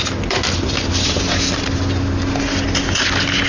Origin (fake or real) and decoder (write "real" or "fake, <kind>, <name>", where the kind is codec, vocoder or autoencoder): real